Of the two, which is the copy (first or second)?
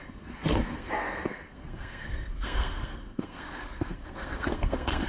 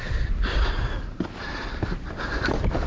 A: first